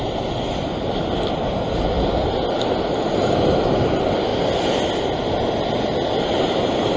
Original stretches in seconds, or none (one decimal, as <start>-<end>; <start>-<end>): 0.0-7.0